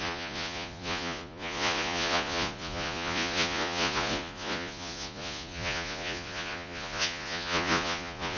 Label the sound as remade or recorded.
remade